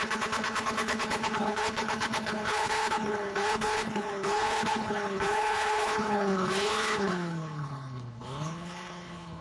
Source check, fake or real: fake